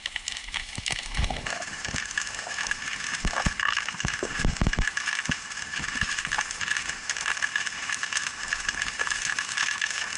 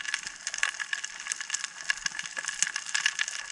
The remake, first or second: first